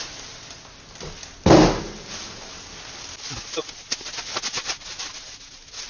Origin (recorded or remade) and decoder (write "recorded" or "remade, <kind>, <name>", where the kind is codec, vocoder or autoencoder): recorded